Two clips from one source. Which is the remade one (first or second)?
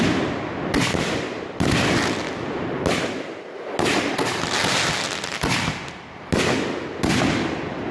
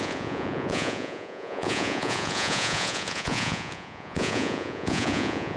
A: second